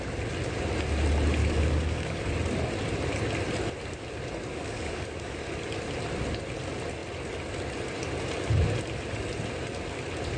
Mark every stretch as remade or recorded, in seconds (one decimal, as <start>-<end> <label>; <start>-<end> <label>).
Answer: 0.0-1.4 recorded; 1.4-2.3 remade; 2.3-4.5 recorded; 4.5-5.5 remade; 5.5-10.4 recorded